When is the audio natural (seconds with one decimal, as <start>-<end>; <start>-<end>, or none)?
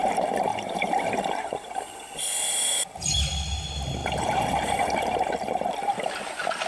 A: 0.0-4.0; 5.3-6.7